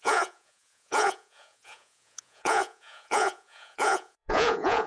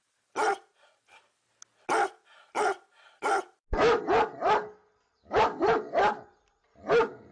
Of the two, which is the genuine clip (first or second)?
second